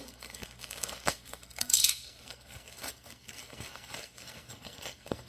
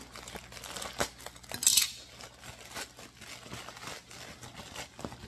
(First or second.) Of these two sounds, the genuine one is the second